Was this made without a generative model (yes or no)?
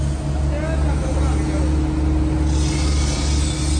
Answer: yes